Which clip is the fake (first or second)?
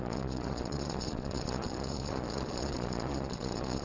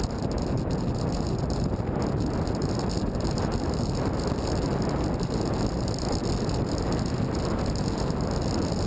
first